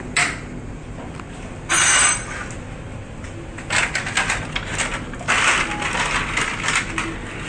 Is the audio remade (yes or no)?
no